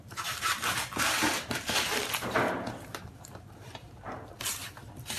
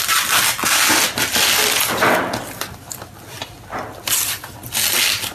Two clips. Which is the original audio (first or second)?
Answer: second